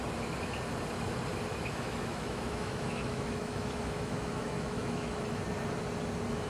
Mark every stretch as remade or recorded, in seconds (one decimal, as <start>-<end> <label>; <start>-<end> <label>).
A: 0.0-1.5 recorded; 1.5-5.4 remade; 5.4-6.5 recorded